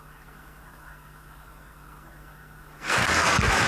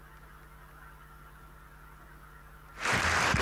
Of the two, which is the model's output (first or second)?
first